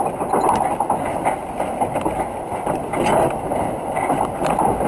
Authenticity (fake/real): real